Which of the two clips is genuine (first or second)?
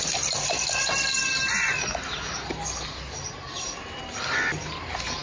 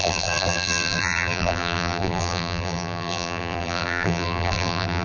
first